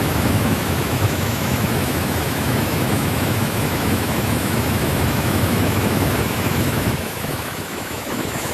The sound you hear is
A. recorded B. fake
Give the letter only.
B